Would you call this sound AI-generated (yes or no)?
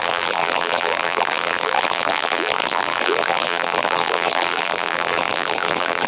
yes